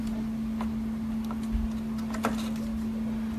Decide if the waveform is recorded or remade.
recorded